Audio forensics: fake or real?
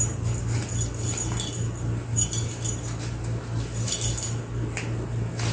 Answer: real